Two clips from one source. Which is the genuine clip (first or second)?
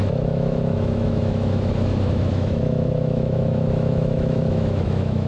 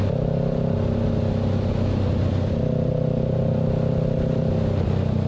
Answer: second